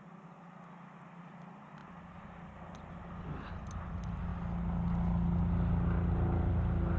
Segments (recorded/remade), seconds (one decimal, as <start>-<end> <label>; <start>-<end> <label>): 0.0-7.0 recorded